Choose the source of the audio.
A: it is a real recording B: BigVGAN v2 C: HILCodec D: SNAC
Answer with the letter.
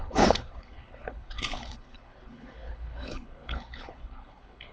C